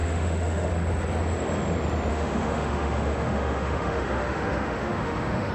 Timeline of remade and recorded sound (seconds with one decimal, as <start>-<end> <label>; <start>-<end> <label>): 0.0-0.7 remade; 0.7-2.1 recorded; 2.1-5.5 remade